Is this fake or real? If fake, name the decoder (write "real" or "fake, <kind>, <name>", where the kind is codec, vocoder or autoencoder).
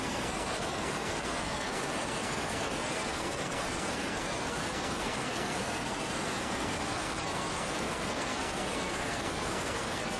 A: fake, codec, SNAC